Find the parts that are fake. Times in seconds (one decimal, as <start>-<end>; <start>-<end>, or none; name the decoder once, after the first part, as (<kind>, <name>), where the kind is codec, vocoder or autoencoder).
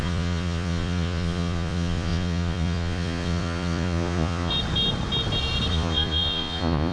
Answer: 0.0-4.5 (vocoder, Vocos); 5.7-6.9